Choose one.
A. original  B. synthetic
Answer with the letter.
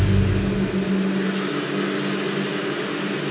A